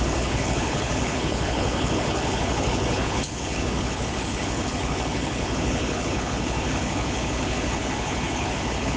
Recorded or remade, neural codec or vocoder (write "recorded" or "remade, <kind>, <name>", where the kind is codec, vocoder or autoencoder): remade, codec, HILCodec